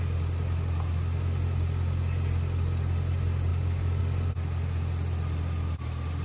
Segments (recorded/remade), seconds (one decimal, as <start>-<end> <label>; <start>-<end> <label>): 0.0-3.5 recorded; 3.5-4.0 remade; 4.0-6.2 recorded